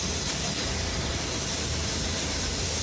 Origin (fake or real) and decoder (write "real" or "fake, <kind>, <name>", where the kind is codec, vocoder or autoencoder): fake, vocoder, BigVGAN v2